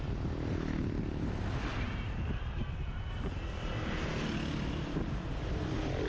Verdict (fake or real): real